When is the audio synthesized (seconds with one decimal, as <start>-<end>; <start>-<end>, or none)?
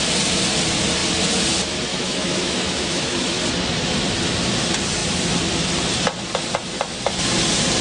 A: 1.9-3.4